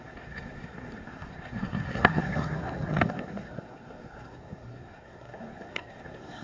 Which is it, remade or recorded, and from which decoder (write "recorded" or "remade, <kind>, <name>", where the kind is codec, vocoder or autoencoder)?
remade, codec, SNAC